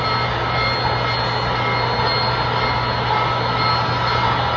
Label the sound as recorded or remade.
recorded